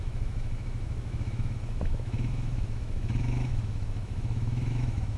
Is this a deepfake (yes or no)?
yes